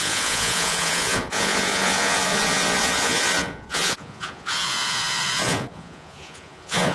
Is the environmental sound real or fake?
fake